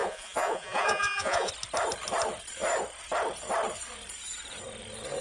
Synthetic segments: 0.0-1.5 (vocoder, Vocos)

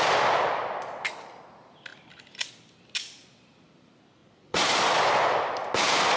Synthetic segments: 4.2-4.8 (vocoder, Vocos)

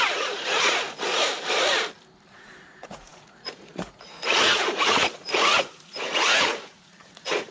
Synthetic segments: 0.0-1.2 (vocoder, Vocos); 2.3-7.5

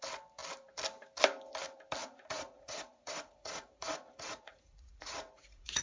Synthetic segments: 2.0-5.8 (vocoder, Vocos)